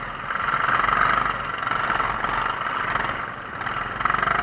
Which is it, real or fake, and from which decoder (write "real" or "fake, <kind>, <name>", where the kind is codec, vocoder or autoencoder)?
real